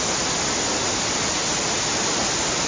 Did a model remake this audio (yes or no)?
no